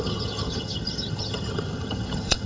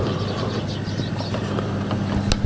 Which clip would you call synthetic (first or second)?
first